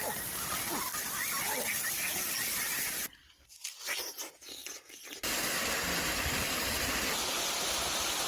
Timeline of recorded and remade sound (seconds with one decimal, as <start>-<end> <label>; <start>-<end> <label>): 0.0-8.3 recorded